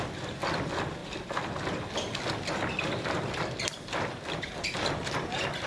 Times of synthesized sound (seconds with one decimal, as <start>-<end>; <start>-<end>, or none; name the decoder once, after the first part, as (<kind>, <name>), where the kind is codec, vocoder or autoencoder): none